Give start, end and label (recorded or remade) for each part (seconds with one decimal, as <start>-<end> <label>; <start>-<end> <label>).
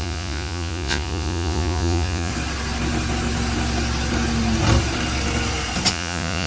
0.0-2.3 remade; 2.3-5.9 recorded; 5.9-6.5 remade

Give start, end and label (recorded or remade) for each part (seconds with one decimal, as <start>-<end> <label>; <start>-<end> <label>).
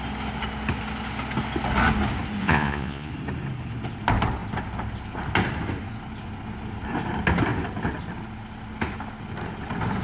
0.0-2.4 recorded; 2.4-3.1 remade; 3.1-10.0 recorded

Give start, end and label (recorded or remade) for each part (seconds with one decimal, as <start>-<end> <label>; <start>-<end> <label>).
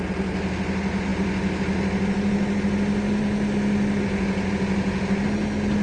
0.0-5.8 recorded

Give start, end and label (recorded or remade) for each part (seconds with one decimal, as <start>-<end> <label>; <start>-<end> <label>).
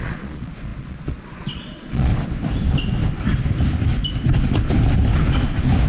0.0-2.1 remade; 2.1-5.9 recorded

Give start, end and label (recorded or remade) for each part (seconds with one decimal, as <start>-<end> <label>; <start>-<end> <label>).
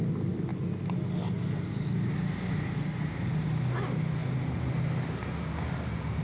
0.0-6.2 recorded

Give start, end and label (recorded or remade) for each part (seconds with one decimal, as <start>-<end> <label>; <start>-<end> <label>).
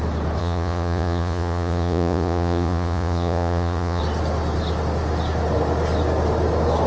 0.0-0.4 recorded; 0.4-4.0 remade; 4.0-6.9 recorded